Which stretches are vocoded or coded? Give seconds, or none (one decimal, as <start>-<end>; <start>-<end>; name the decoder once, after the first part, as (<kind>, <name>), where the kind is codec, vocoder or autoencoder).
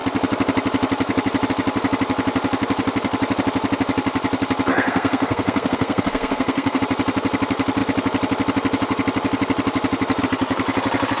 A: 4.7-6.8 (codec, SNAC)